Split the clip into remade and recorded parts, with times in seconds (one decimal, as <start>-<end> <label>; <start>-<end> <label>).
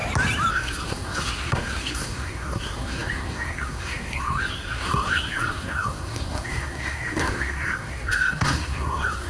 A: 0.0-0.5 recorded; 0.5-9.3 remade